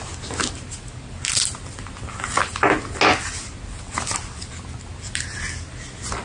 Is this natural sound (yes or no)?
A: yes